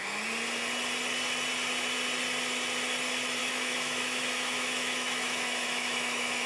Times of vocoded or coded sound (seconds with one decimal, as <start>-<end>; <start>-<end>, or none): 3.4-6.5